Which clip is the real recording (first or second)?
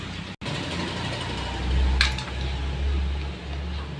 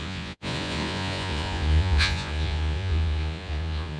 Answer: first